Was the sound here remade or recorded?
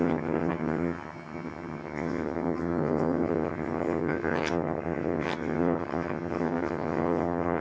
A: remade